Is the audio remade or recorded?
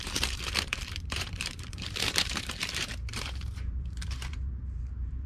remade